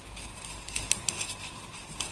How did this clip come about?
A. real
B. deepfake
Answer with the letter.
A